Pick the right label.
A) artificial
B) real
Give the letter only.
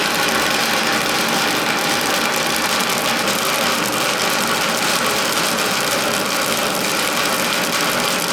B